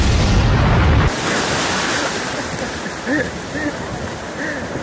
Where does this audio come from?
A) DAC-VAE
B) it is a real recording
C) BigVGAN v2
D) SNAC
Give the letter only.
B